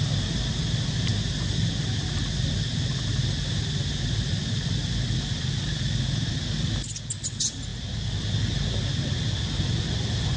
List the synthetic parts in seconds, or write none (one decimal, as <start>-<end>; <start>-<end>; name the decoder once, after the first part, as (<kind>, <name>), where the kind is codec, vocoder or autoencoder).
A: none